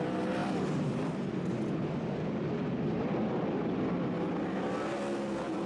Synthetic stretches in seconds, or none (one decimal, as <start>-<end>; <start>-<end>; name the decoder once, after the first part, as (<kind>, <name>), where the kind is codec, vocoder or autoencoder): 0.4-3.8 (vocoder, BigVGAN v2)

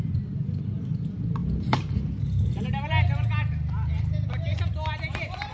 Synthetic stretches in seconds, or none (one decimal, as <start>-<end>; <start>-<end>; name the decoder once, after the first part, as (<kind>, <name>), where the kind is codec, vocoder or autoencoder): 1.4-2.1 (vocoder, BigVGAN v2)

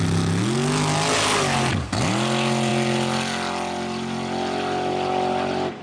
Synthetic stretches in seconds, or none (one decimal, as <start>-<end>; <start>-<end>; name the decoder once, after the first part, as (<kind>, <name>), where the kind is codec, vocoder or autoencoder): none

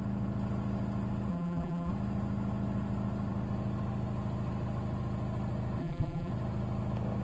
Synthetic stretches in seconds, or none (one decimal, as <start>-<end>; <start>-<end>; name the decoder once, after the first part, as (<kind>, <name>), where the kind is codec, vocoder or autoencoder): 1.3-1.9 (vocoder, BigVGAN v2); 5.8-6.3